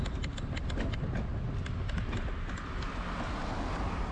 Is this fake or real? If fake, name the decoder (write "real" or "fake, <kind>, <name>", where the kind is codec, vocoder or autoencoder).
real